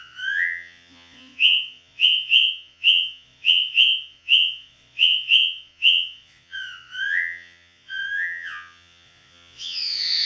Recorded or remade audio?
remade